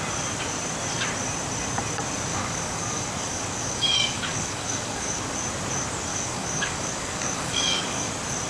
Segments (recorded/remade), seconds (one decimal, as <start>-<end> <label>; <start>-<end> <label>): 0.0-2.3 recorded; 2.3-5.2 remade; 5.2-6.1 recorded; 6.1-8.1 remade; 8.1-8.5 recorded